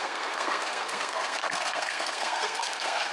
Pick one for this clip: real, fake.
fake